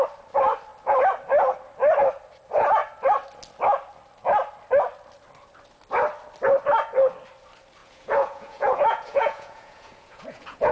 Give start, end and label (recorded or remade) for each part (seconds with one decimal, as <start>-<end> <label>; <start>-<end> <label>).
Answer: 0.0-7.8 recorded; 7.8-10.7 remade